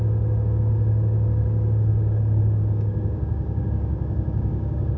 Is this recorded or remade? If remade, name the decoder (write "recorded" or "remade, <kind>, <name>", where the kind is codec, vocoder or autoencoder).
remade, codec, DAC